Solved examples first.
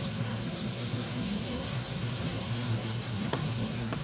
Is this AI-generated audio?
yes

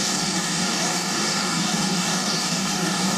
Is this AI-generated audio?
yes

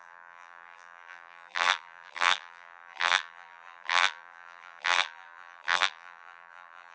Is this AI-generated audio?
yes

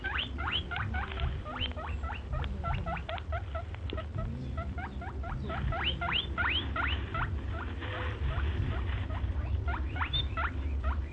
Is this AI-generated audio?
no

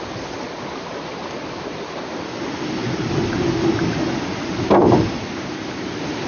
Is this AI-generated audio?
no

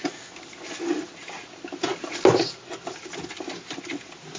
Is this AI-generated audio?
no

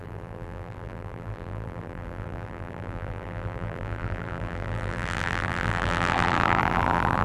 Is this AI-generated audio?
yes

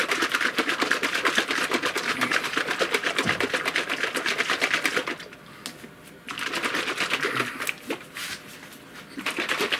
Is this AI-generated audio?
no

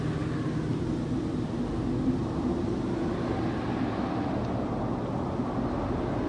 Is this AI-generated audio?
no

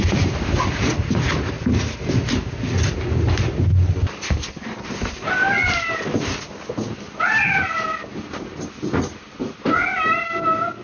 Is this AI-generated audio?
no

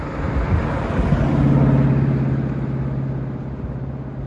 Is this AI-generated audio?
no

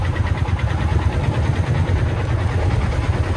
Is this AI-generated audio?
no